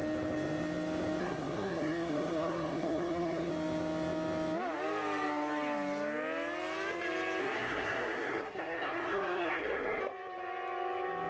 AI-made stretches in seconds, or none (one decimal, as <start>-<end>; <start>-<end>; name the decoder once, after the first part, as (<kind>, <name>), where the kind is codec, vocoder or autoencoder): 1.2-3.5 (codec, SNAC); 7.4-10.0